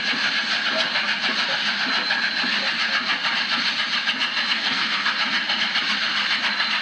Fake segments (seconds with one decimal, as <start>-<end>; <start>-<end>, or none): 4.5-5.1